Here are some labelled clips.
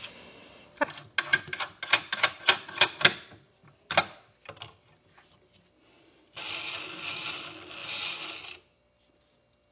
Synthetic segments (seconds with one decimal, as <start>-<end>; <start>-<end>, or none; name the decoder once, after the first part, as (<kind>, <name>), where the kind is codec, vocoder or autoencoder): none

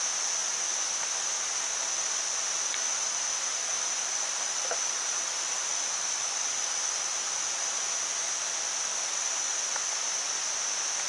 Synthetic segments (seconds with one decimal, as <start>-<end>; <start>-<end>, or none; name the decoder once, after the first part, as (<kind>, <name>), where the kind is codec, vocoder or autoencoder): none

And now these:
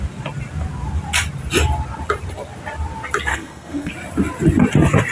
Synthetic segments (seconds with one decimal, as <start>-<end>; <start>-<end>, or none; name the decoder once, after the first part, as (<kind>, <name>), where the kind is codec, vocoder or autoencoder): 3.3-3.9 (codec, SNAC)

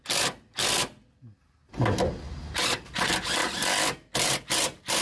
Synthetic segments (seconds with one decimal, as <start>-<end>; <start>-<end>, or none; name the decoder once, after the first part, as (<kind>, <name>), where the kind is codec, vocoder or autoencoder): none

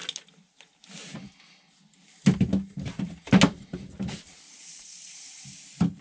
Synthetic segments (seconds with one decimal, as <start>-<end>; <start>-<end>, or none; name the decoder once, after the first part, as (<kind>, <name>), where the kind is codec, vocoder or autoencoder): none

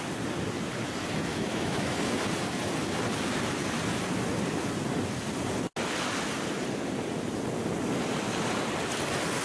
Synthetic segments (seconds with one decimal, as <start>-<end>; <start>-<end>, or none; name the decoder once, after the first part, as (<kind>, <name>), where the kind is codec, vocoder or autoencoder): 1.3-2.0 (autoencoder, DAC-VAE)

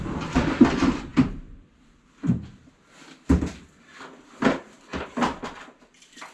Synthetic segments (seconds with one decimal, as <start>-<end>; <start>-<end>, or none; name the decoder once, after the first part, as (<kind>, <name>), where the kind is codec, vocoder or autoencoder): 0.0-4.9 (vocoder, BigVGAN v2); 5.8-6.3